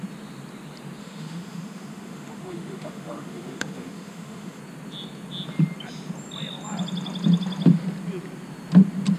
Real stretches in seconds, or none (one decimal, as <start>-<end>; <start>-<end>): 0.0-1.0; 4.6-9.2